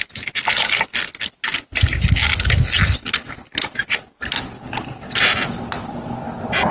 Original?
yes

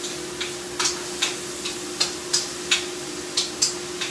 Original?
yes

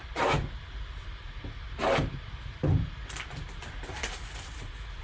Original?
yes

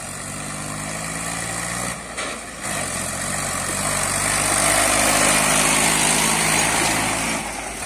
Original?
yes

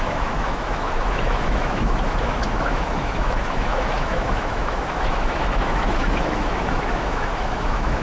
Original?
no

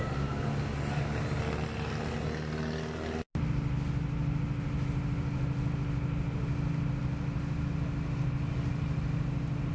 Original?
yes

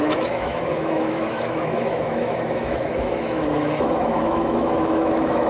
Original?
no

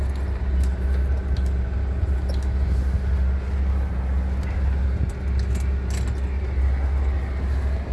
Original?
yes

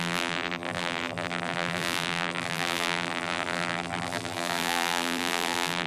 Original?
no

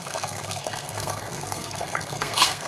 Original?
no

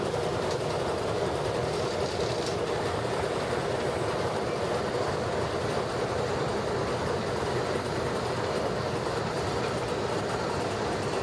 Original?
yes